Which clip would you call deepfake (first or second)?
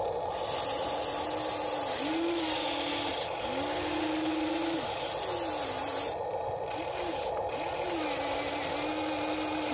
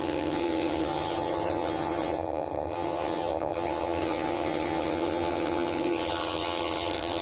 second